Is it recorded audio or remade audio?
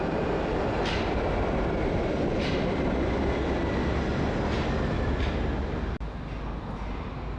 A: recorded